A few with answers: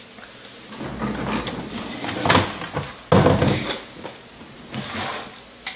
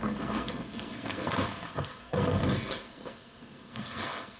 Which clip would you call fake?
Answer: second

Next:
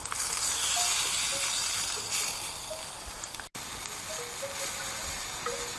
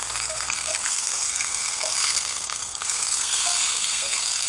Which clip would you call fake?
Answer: second